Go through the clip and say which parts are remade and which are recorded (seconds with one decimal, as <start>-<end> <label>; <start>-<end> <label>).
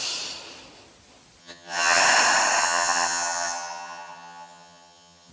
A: 0.0-1.4 recorded; 1.4-2.0 remade; 2.0-2.6 recorded; 2.6-5.3 remade